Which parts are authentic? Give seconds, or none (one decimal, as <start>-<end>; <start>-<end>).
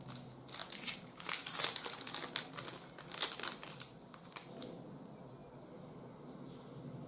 0.0-7.1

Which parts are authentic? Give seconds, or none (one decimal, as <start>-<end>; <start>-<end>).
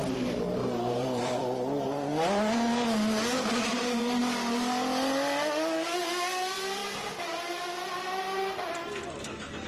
0.0-0.6; 1.4-3.7; 4.2-9.7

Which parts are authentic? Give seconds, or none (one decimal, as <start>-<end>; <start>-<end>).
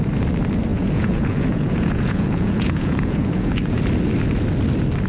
0.0-0.7; 3.8-5.1